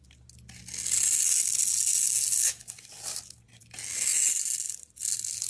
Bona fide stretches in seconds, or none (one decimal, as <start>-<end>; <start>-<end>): 0.0-5.5